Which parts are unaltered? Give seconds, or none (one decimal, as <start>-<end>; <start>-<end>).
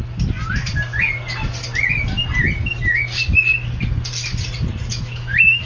0.0-4.9